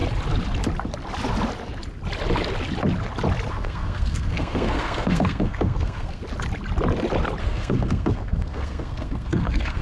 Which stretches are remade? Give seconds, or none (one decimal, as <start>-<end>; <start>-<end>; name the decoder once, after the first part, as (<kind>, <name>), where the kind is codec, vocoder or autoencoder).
3.5-6.2 (codec, SNAC); 7.4-9.8